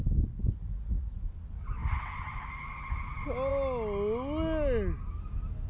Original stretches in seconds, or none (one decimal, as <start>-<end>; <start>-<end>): 0.0-0.6; 1.1-5.7